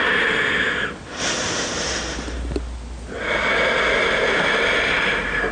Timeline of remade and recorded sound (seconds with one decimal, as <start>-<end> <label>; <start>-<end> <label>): 0.0-5.5 recorded